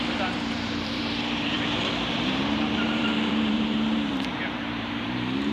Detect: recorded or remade remade